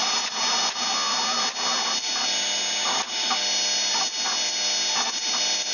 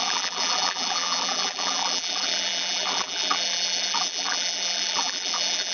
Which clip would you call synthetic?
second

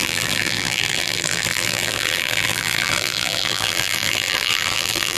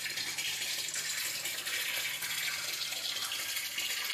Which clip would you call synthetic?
first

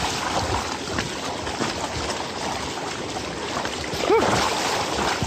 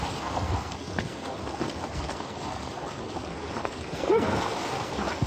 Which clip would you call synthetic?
second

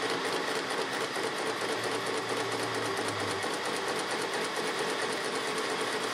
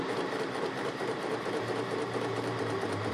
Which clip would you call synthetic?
second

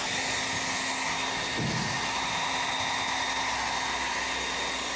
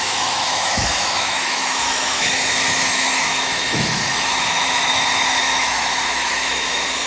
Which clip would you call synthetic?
second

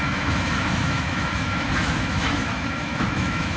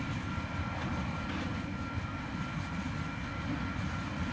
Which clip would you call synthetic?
first